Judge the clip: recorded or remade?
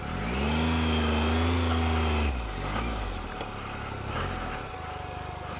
recorded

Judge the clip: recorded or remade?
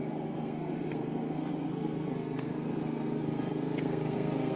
remade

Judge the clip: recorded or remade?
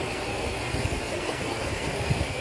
remade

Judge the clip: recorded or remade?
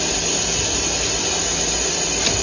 recorded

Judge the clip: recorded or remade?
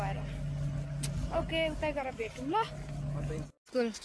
recorded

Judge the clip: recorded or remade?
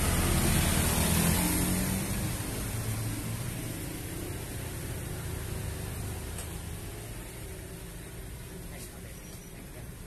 recorded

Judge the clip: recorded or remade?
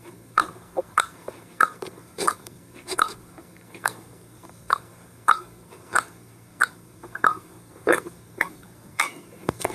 remade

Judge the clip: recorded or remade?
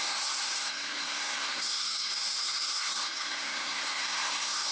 remade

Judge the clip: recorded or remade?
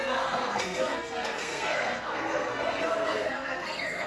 remade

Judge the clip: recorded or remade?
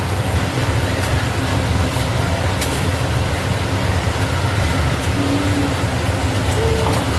recorded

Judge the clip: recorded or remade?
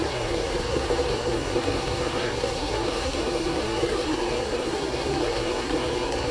remade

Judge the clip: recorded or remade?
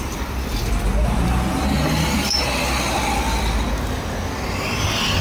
recorded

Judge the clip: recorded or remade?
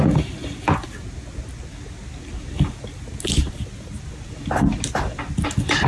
recorded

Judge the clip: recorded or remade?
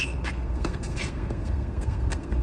remade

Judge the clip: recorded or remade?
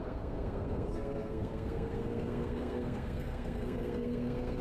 remade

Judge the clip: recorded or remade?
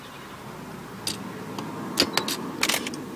recorded